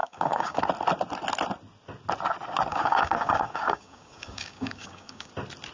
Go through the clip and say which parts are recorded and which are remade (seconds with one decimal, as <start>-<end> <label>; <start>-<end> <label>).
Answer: 0.0-0.6 remade; 0.6-2.7 recorded; 2.7-5.3 remade; 5.3-5.7 recorded